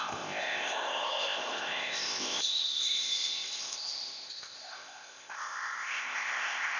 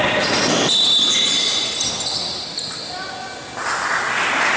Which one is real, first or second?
second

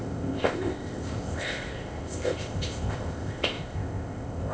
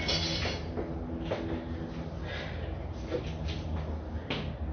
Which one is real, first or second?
second